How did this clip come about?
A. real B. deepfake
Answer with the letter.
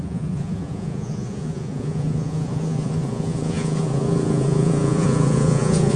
B